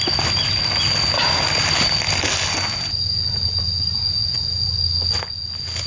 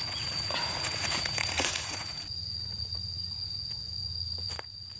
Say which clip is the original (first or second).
first